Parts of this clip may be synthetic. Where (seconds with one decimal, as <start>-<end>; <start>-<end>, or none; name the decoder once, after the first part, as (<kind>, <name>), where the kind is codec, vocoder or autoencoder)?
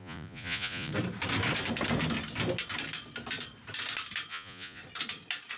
0.0-0.9 (vocoder, Vocos); 4.3-4.8